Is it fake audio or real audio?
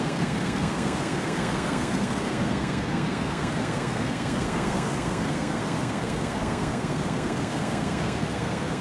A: fake